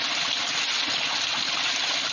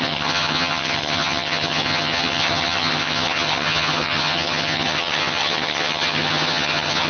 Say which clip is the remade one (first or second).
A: second